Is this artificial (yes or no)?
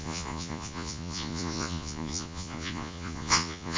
yes